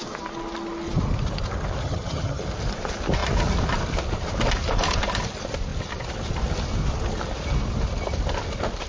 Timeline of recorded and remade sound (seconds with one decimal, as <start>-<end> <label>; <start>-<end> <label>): 0.0-1.8 recorded; 1.8-2.4 remade; 2.4-8.9 recorded